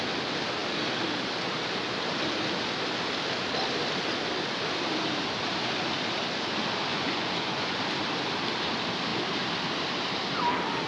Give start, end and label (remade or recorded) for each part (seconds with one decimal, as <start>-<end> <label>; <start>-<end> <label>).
0.0-6.9 recorded; 6.9-7.8 remade; 7.8-10.9 recorded